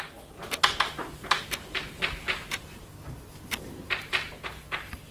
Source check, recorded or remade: recorded